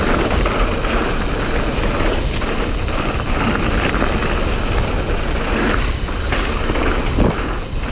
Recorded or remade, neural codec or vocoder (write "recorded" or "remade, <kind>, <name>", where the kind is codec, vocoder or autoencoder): recorded